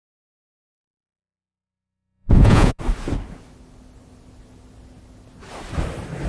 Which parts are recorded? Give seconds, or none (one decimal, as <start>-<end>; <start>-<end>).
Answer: 2.8-6.3

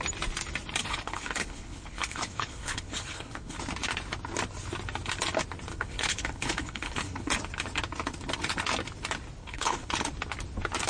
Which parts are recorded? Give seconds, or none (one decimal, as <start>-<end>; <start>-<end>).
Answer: 0.0-0.8; 3.6-5.7; 7.3-9.4; 9.9-10.9

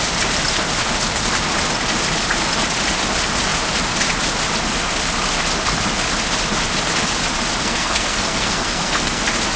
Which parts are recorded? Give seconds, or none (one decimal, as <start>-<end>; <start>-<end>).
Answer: 0.0-7.6; 9.2-9.6

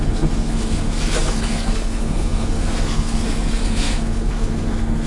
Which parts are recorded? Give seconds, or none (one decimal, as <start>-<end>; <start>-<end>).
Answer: none